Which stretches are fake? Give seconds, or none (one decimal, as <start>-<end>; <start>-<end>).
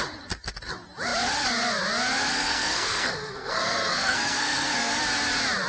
2.3-5.0